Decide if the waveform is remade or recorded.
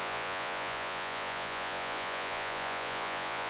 remade